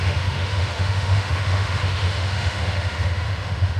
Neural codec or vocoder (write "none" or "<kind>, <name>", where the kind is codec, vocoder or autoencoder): autoencoder, DAC-VAE